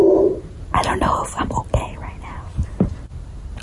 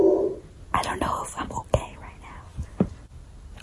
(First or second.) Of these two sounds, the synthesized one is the first